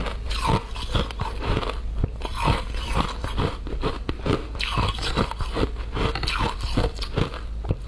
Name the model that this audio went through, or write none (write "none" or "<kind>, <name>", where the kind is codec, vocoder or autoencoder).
none